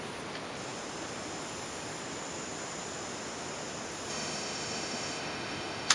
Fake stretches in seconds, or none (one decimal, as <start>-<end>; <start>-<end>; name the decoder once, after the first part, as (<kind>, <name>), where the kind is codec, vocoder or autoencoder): 4.1-5.9 (autoencoder, DAC-VAE)